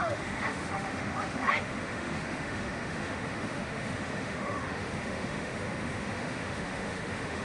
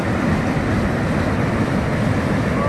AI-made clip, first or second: first